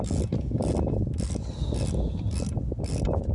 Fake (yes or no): no